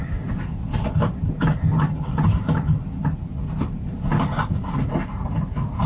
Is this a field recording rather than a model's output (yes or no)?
yes